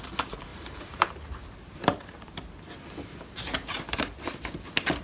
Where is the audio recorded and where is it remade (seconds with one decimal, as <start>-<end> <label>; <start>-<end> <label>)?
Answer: 0.0-0.5 recorded; 0.5-2.3 remade; 2.3-5.0 recorded